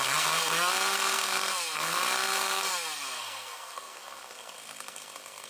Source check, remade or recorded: remade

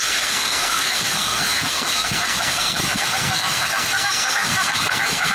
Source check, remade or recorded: remade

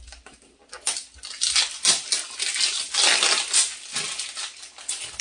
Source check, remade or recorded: recorded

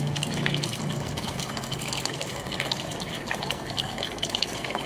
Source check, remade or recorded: remade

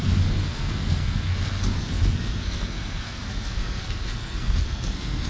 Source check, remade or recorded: remade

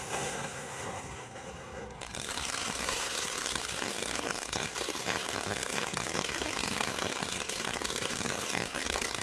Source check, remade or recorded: remade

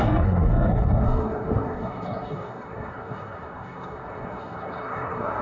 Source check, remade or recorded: remade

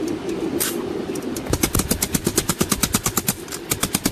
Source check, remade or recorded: recorded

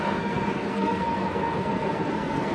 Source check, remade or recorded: remade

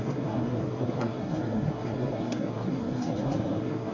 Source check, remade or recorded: remade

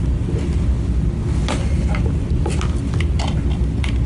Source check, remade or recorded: recorded